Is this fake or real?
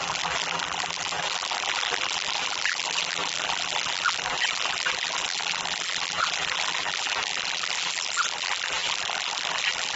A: fake